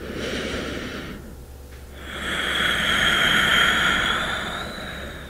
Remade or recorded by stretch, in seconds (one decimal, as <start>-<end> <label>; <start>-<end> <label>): 0.0-5.3 recorded